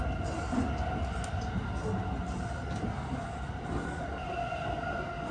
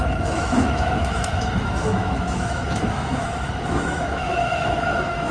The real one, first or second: first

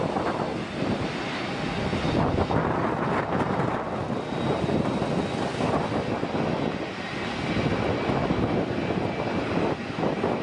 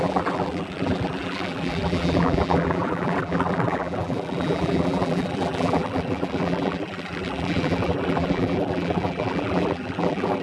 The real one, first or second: first